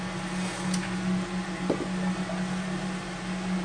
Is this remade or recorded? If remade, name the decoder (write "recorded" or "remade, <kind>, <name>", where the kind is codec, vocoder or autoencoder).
recorded